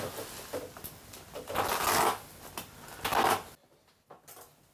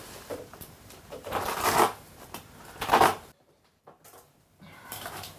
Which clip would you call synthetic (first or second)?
second